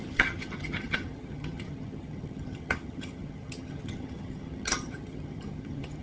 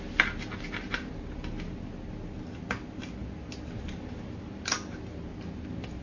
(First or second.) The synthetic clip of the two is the first